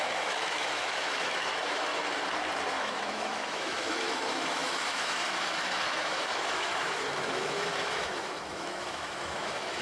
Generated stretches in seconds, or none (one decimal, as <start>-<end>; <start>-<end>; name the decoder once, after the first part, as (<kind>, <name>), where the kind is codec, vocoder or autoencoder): 0.0-1.9 (autoencoder, DAC-VAE); 2.8-9.8